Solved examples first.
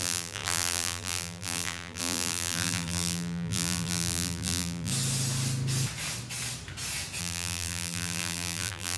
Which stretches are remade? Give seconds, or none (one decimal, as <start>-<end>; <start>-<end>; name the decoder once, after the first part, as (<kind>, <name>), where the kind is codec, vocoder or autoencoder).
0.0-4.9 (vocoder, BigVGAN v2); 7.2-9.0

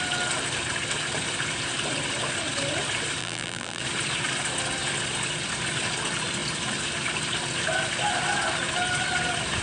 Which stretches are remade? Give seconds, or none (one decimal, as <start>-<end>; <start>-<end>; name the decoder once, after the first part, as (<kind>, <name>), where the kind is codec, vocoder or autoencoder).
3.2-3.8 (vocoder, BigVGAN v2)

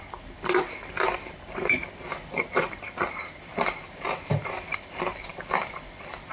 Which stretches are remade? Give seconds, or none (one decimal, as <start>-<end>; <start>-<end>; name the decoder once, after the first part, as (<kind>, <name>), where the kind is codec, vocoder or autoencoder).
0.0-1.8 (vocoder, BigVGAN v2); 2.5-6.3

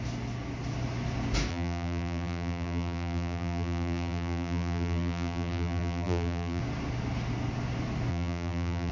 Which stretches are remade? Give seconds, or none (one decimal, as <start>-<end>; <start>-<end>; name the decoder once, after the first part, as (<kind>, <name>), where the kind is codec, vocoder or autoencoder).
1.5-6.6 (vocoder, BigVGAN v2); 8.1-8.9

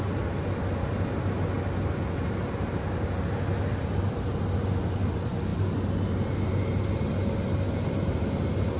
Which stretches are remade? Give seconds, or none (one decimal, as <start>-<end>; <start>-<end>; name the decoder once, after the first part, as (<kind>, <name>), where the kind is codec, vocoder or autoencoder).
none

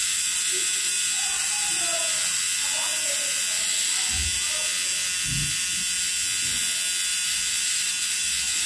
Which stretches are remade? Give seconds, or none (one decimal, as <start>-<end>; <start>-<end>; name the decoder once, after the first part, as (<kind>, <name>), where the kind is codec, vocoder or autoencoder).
0.0-2.0 (vocoder, BigVGAN v2); 2.9-3.4; 7.1-8.7

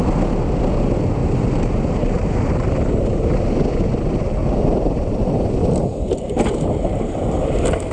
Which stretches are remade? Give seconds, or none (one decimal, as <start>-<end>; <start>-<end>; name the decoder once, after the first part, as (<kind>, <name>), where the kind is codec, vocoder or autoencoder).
1.2-3.2 (vocoder, BigVGAN v2); 4.4-5.5; 5.9-6.5